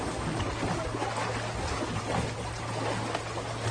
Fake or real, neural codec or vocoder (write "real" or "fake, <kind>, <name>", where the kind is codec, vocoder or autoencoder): real